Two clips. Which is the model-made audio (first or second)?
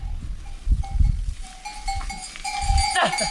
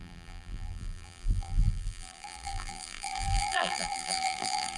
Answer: second